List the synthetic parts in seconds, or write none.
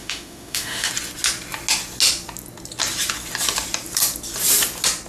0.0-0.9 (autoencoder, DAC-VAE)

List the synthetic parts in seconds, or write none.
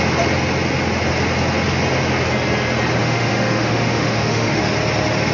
3.0-4.6 (autoencoder, DAC-VAE)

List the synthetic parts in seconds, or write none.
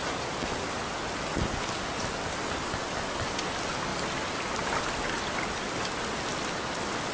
none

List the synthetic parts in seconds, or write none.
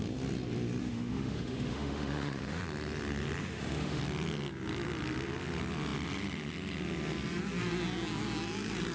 0.8-2.6 (autoencoder, DAC-VAE); 3.4-4.0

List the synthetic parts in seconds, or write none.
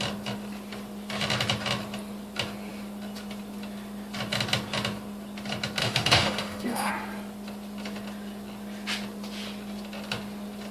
5.8-6.9 (autoencoder, DAC-VAE)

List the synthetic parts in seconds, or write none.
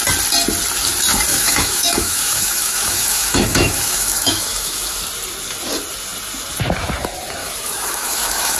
1.3-5.0 (autoencoder, DAC-VAE); 7.4-8.6